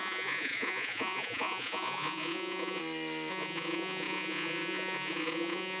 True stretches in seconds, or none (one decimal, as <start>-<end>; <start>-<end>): 2.8-3.3